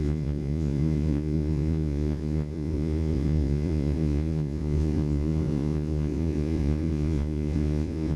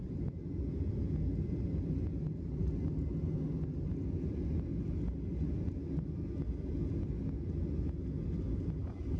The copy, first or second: first